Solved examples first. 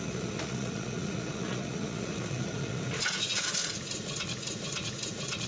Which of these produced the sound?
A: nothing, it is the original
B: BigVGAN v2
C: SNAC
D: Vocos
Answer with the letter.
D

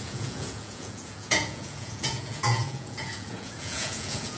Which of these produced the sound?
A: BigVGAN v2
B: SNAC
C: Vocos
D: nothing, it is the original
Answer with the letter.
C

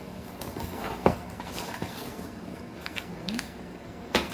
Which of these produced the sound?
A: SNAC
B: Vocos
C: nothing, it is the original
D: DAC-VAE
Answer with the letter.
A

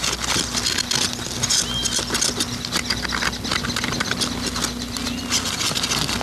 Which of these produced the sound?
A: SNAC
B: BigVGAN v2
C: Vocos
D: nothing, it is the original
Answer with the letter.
D